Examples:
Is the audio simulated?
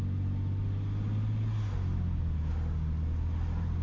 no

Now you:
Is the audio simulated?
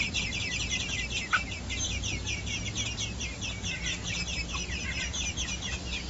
no